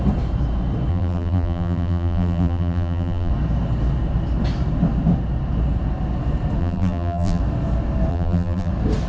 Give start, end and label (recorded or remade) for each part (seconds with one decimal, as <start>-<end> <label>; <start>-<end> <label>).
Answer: 0.0-0.9 recorded; 0.9-3.3 remade; 3.3-6.6 recorded; 6.6-7.4 remade; 7.4-8.1 recorded; 8.1-8.7 remade; 8.7-9.1 recorded